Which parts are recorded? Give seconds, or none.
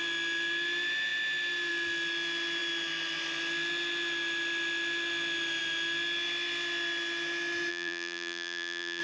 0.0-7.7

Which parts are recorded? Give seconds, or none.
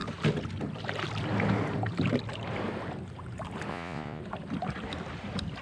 0.0-3.7; 4.2-5.6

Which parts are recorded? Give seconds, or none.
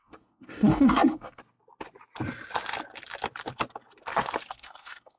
1.4-4.5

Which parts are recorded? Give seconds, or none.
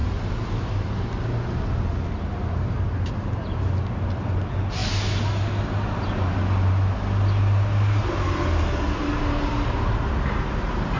0.0-11.0